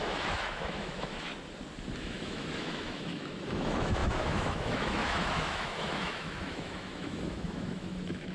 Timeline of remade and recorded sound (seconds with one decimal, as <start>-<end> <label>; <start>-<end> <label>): 0.0-1.3 remade; 1.3-2.0 recorded; 2.0-8.3 remade